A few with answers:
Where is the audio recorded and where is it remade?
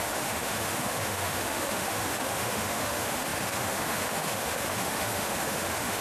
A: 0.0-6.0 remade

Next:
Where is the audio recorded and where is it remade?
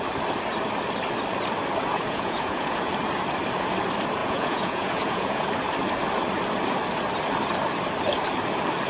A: 0.0-1.9 recorded; 1.9-2.9 remade; 2.9-4.2 recorded; 4.2-5.5 remade; 5.5-8.9 recorded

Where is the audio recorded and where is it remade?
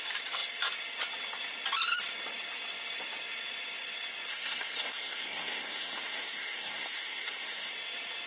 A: 0.0-4.3 recorded; 4.3-7.7 remade; 7.7-8.3 recorded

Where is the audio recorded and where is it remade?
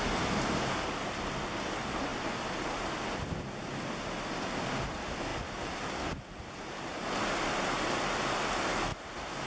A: 0.0-9.5 recorded